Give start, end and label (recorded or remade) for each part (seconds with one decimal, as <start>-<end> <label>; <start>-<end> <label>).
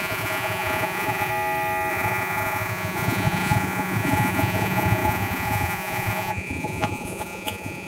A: 0.0-1.3 remade; 1.3-1.9 recorded; 1.9-7.9 remade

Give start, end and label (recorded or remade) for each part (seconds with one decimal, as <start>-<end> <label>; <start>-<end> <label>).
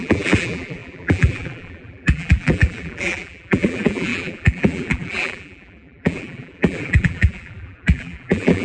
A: 0.0-8.6 remade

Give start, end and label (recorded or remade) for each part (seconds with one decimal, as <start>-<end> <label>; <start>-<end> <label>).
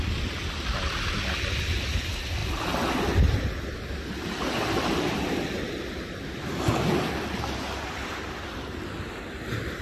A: 0.0-9.8 recorded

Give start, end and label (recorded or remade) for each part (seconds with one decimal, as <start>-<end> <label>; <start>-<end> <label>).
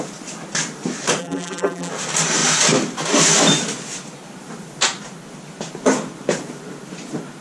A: 0.0-1.2 recorded; 1.2-1.9 remade; 1.9-7.4 recorded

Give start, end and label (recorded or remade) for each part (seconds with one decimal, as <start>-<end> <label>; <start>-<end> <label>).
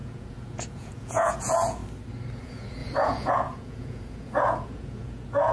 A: 0.0-1.8 remade; 1.8-2.4 recorded; 2.4-5.5 remade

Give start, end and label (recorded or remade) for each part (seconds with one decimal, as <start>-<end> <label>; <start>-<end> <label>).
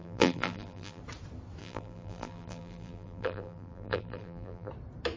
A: 0.0-1.0 remade; 1.0-1.6 recorded; 1.6-4.7 remade; 4.7-5.2 recorded